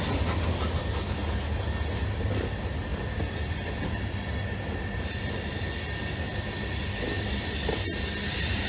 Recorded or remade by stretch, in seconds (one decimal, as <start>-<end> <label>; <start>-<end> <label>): 0.0-8.7 recorded